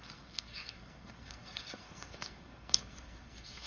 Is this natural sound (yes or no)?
no